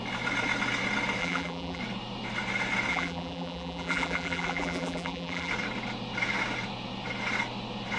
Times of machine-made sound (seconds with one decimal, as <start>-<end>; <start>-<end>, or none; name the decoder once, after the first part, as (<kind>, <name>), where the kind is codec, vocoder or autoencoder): 1.2-1.8 (vocoder, BigVGAN v2); 2.9-5.5

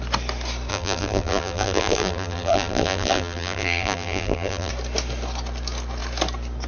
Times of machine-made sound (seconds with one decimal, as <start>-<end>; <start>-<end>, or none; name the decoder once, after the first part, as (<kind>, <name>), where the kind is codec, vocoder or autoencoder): 0.7-4.7 (vocoder, BigVGAN v2)

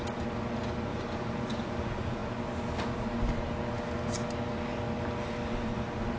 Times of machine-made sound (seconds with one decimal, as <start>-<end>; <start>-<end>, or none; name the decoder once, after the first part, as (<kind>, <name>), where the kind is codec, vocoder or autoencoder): 0.9-1.8 (vocoder, BigVGAN v2)

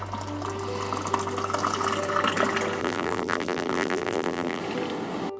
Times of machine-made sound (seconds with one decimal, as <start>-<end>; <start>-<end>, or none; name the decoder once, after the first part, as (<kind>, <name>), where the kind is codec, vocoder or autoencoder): 2.8-4.6 (vocoder, BigVGAN v2)

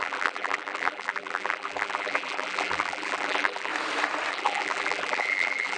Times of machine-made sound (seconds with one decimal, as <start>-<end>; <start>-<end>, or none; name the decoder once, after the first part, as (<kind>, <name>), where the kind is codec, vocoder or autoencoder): 0.0-3.7 (vocoder, BigVGAN v2); 4.3-5.8